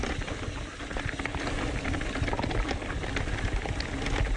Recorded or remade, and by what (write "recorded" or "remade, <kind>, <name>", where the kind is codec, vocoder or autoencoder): recorded